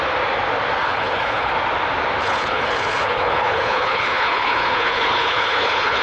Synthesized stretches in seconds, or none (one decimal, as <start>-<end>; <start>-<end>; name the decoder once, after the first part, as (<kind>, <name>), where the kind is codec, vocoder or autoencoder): 0.8-1.5 (codec, HILCodec); 2.2-6.0